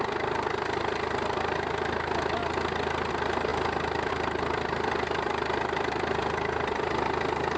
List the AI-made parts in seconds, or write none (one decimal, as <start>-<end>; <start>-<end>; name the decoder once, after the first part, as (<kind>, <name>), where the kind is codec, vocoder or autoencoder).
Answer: 0.0-2.4 (vocoder, BigVGAN v2); 3.1-3.5; 4.1-7.6